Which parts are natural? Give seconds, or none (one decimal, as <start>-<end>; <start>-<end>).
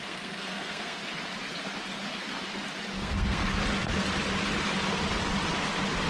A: 1.0-3.0; 3.4-6.1